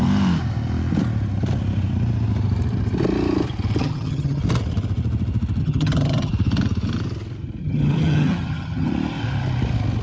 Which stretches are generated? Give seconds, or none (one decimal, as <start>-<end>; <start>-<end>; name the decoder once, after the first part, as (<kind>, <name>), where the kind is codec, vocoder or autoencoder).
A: 3.8-4.4 (vocoder, HiFi-GAN); 5.6-6.3; 7.6-8.9